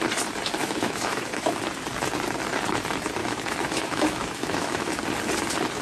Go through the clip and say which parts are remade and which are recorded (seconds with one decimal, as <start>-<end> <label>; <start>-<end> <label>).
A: 0.0-0.6 recorded; 0.6-1.6 remade; 1.6-3.2 recorded; 3.2-5.0 remade; 5.0-5.8 recorded